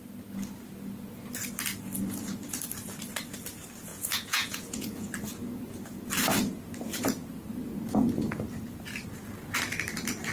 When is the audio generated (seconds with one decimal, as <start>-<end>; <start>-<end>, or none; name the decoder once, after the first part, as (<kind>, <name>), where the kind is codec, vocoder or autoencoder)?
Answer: 3.9-5.1 (vocoder, Vocos)